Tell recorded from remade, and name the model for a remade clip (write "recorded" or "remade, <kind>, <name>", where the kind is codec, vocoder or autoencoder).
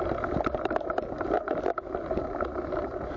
recorded